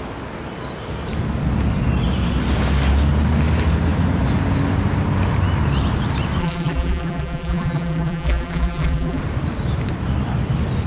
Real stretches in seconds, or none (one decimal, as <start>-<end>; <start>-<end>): 0.0-6.4; 9.2-10.9